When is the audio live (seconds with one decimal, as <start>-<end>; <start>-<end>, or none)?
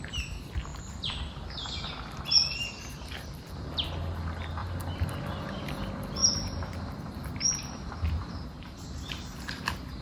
0.0-4.6; 5.2-6.2; 7.0-8.2; 9.1-10.0